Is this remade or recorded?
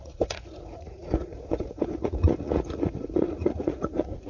remade